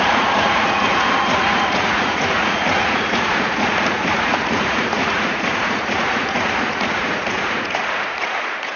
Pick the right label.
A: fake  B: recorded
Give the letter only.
A